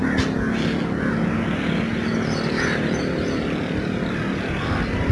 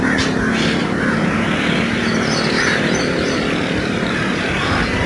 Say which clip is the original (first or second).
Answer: first